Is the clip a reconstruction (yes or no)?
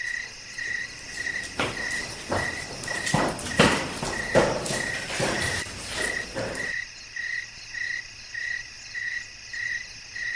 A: no